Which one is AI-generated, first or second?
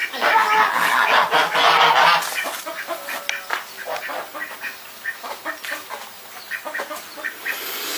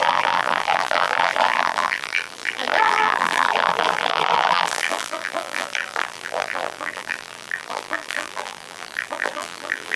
second